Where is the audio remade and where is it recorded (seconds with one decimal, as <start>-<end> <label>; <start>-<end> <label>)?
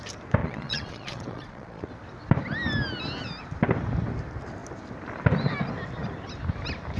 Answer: 0.0-0.4 recorded; 0.4-1.9 remade; 1.9-7.0 recorded